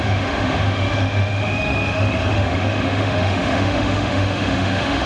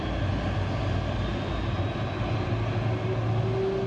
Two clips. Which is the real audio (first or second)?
second